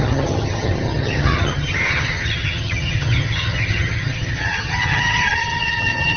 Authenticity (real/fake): fake